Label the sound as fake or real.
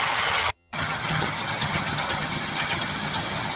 fake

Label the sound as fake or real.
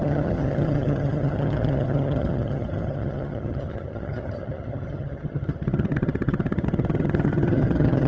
fake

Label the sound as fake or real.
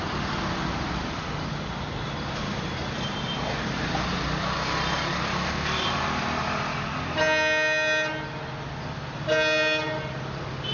real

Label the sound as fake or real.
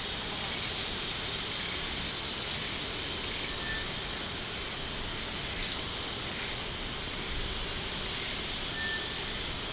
real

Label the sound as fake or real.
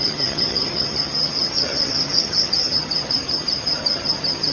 fake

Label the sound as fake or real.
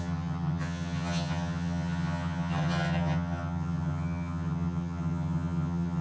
fake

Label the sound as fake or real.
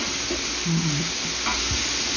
real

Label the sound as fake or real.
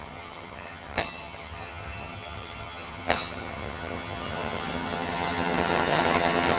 fake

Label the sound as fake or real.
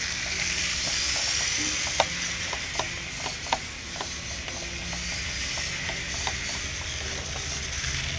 real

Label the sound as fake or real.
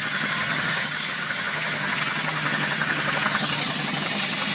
fake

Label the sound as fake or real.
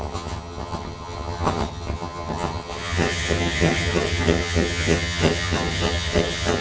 fake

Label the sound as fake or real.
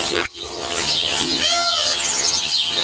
fake